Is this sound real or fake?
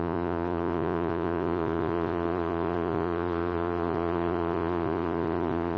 fake